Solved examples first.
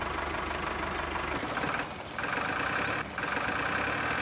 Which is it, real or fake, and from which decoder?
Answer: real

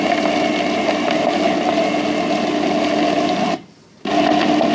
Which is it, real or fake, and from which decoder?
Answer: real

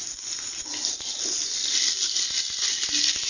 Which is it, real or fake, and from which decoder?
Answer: real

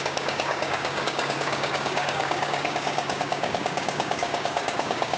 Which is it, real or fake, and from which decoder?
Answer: fake, codec, DAC